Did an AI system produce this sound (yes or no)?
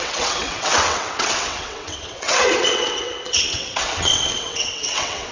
yes